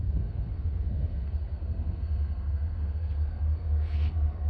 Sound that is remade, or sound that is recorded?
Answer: remade